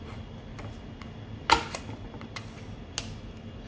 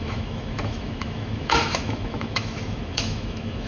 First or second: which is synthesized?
second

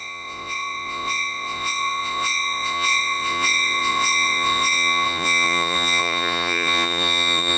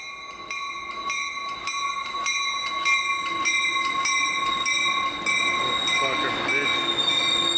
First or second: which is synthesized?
first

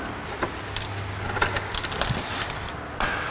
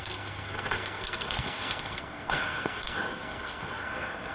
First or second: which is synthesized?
second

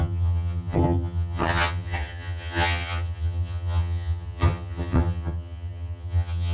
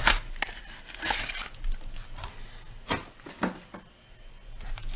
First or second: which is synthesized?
first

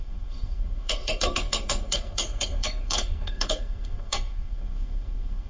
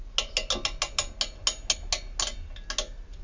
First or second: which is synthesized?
first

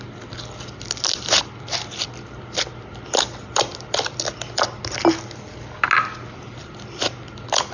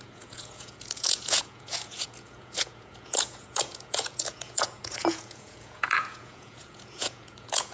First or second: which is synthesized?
second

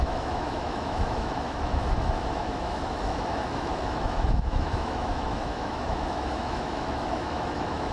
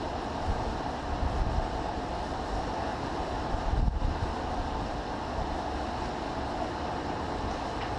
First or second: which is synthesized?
first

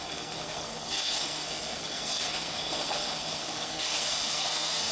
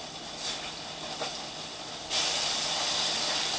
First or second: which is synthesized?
first